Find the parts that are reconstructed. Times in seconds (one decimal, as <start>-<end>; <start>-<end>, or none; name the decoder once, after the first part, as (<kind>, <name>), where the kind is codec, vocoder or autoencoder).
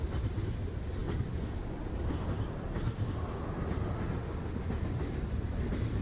none